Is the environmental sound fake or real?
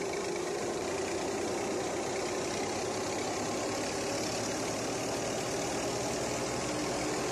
real